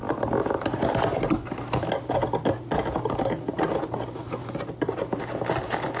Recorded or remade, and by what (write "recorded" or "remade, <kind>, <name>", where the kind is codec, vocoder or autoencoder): recorded